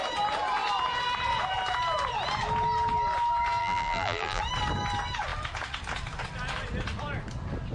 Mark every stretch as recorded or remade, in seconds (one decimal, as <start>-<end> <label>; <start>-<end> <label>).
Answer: 0.0-3.6 recorded; 3.6-4.4 remade; 4.4-7.7 recorded